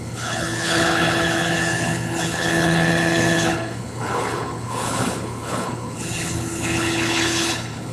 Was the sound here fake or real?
fake